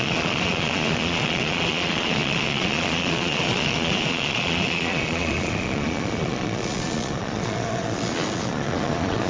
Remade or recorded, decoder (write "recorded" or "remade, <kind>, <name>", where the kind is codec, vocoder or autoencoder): remade, vocoder, Vocos